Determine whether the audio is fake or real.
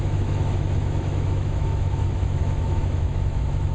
fake